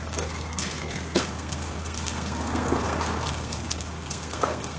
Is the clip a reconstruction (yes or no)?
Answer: yes